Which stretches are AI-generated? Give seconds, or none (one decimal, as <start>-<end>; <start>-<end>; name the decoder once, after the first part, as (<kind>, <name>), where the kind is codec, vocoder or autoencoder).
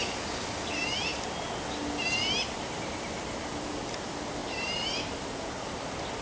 4.4-5.2 (vocoder, BigVGAN v2)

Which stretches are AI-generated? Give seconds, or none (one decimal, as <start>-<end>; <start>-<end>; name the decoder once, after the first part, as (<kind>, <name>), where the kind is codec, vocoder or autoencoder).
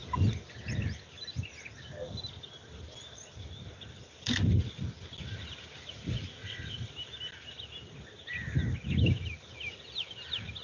6.4-6.9 (vocoder, WaveNeXt)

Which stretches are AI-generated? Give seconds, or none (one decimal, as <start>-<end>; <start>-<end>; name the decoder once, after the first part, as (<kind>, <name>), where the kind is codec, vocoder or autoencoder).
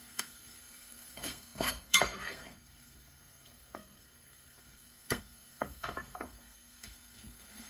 0.0-7.7 (codec, SNAC)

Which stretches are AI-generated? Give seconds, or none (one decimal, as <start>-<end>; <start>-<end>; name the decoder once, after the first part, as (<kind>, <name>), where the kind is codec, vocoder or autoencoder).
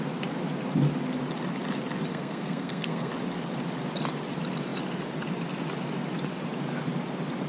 2.1-3.1 (codec, SNAC)